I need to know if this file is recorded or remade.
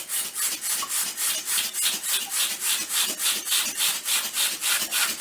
recorded